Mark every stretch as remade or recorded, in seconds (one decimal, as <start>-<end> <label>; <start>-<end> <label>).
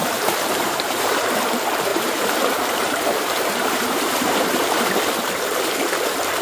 0.0-1.3 remade; 1.3-1.9 recorded; 1.9-4.9 remade; 4.9-6.4 recorded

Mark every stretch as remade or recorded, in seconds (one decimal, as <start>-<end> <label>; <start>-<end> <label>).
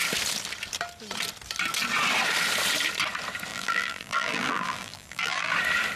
0.0-3.5 recorded; 3.5-5.5 remade; 5.5-6.0 recorded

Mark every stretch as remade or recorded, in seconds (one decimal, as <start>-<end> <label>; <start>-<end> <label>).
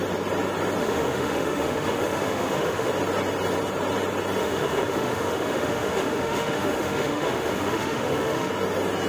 0.0-0.8 recorded; 0.8-2.9 remade; 2.9-4.4 recorded; 4.4-8.5 remade; 8.5-9.1 recorded